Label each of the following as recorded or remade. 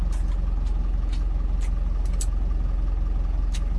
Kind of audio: recorded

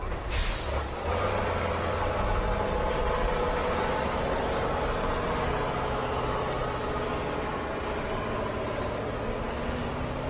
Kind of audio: recorded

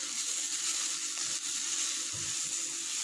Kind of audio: recorded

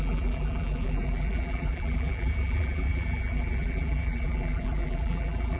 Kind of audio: remade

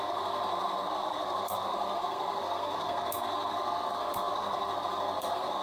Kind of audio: remade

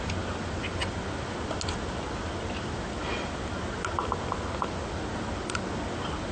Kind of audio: recorded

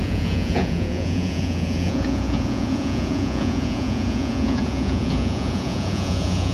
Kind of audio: remade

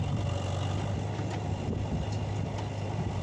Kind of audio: recorded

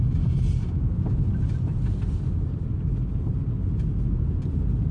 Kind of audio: recorded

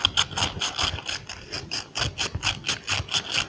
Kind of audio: recorded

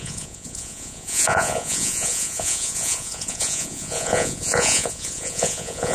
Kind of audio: remade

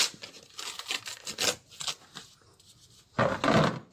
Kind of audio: recorded